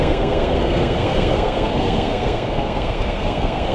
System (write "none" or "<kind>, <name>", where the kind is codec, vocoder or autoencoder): codec, SNAC